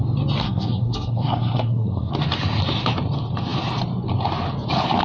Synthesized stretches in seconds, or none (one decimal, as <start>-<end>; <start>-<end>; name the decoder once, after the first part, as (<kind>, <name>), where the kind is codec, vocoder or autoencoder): 0.4-2.1 (codec, SNAC)